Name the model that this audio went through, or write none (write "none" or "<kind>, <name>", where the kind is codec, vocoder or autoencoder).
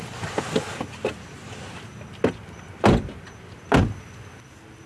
none